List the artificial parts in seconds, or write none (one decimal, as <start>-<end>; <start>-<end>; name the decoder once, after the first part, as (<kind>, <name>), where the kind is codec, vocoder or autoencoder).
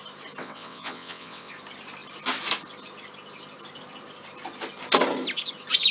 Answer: 0.4-1.5 (vocoder, WaveNeXt)